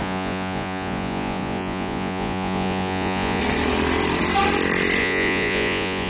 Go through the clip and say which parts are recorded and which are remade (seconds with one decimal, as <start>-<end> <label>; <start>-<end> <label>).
0.0-3.4 remade; 3.4-5.0 recorded; 5.0-6.1 remade